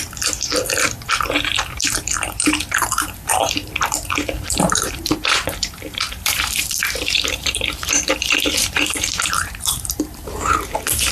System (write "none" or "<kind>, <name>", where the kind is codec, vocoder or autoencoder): vocoder, BigVGAN v2